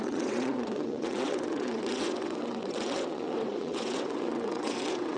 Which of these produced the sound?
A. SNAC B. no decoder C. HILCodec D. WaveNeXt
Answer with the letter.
D